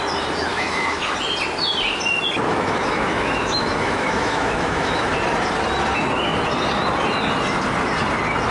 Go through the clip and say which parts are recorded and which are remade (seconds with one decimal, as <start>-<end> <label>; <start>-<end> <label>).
0.0-0.5 recorded; 0.5-1.0 remade; 1.0-2.5 recorded; 2.5-5.1 remade; 5.1-8.5 recorded